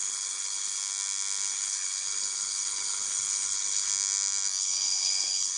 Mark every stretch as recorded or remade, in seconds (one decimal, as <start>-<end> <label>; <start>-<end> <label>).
0.0-0.8 remade; 0.8-1.5 recorded; 1.5-3.9 remade; 3.9-4.6 recorded; 4.6-5.6 remade